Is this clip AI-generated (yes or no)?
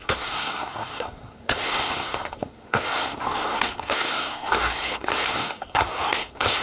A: yes